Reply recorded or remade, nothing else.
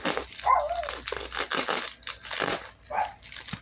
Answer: recorded